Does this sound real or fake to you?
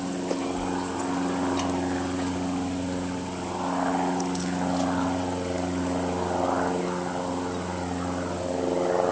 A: real